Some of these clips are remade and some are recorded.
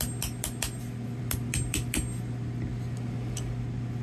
recorded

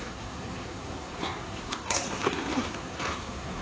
remade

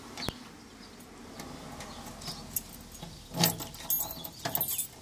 recorded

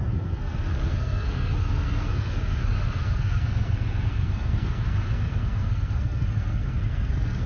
remade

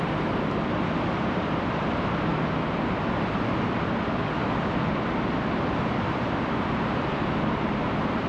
remade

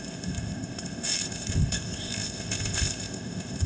remade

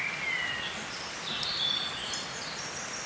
recorded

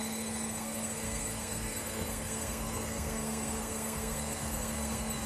remade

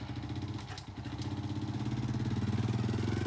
recorded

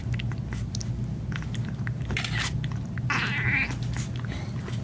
recorded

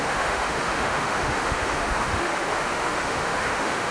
remade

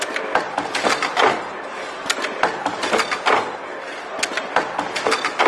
recorded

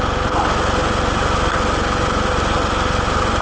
recorded